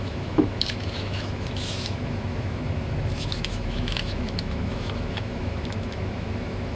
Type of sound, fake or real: fake